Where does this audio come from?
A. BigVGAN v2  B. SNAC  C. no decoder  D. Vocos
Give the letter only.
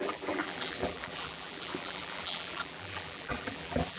A